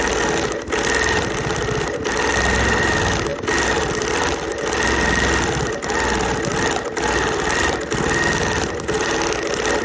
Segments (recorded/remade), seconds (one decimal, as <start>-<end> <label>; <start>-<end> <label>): 0.0-9.8 recorded